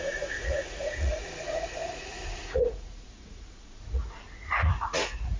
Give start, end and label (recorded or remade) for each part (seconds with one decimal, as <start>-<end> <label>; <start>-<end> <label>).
0.0-5.4 remade